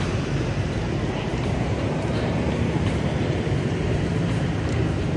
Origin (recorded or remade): remade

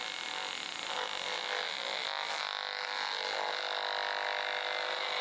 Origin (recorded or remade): recorded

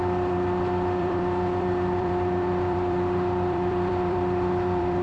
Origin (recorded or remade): remade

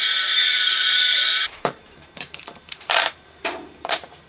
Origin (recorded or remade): remade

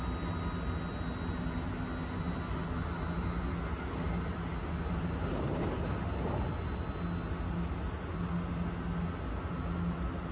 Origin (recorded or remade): recorded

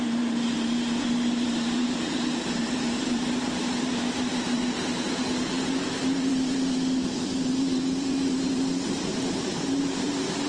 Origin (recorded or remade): remade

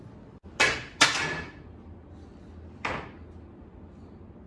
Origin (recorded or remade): recorded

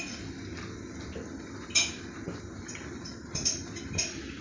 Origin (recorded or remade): recorded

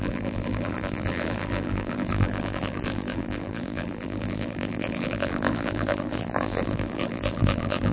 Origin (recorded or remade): remade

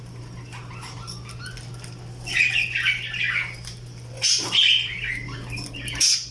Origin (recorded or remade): remade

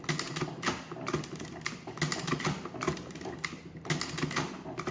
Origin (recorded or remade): recorded